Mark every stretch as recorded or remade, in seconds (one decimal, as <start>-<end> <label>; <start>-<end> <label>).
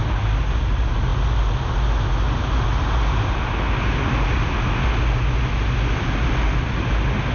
0.0-7.3 recorded